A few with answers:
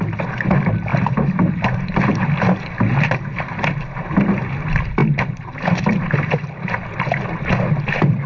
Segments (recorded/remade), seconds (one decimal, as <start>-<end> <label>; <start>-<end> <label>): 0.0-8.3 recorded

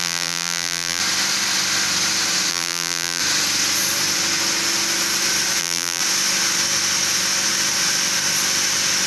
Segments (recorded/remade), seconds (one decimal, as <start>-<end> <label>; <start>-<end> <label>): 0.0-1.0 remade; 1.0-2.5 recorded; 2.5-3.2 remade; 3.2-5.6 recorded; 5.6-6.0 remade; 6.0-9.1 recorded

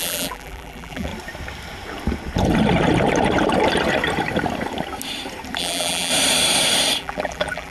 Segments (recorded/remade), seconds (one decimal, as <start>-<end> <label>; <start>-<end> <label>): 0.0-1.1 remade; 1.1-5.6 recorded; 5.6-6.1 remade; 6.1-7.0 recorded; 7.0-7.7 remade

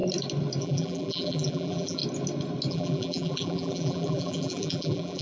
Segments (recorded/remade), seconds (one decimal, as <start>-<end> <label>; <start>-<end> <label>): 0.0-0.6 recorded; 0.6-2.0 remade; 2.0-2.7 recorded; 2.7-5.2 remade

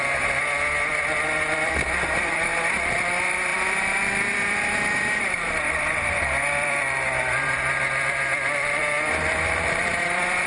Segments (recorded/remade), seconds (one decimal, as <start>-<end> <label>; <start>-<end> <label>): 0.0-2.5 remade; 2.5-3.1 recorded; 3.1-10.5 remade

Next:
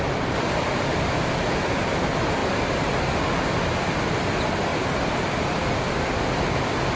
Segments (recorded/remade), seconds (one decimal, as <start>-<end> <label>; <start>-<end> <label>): 0.0-2.4 remade; 2.4-4.3 recorded; 4.3-7.0 remade

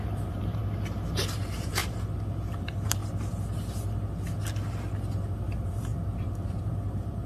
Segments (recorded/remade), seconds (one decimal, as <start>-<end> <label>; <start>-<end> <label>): 0.0-0.6 remade; 0.6-1.2 recorded; 1.2-1.8 remade; 1.8-2.6 recorded; 2.6-3.0 remade; 3.0-5.2 recorded; 5.2-7.3 remade